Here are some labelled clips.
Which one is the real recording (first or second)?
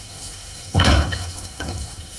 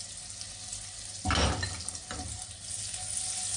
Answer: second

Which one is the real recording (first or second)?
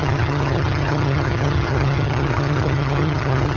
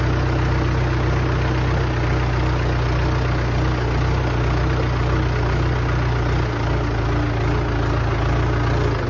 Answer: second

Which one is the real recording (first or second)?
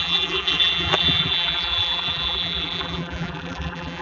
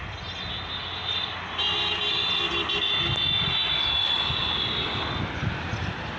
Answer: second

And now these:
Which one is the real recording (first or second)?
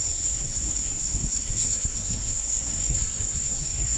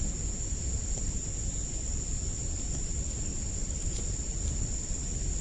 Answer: second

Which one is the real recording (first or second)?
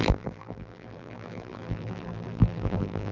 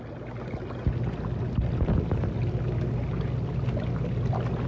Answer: second